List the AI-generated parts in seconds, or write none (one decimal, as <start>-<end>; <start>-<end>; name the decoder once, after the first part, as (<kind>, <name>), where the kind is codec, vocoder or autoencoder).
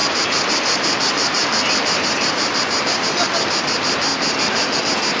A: 0.0-3.1 (vocoder, BigVGAN v2)